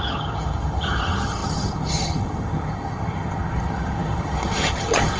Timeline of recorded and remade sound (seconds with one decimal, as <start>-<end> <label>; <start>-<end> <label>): 0.0-5.2 remade

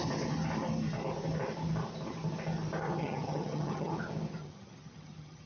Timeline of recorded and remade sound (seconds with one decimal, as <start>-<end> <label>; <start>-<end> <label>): 0.0-3.0 recorded; 3.0-3.9 remade; 3.9-4.4 recorded; 4.4-5.5 remade